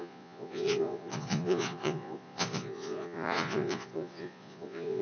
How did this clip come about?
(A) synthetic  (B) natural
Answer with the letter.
A